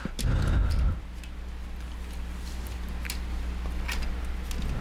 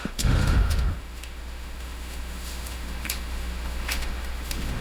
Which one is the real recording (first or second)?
first